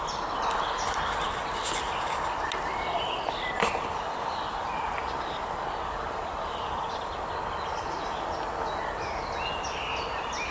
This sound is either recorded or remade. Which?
recorded